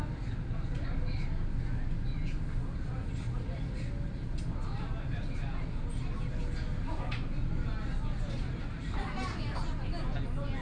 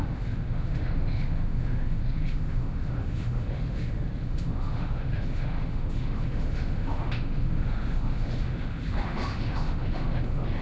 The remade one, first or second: second